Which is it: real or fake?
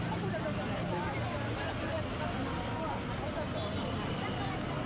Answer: real